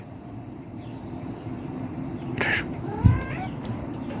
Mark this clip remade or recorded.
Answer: remade